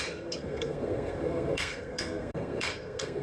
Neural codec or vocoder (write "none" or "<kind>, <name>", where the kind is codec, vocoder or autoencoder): codec, SNAC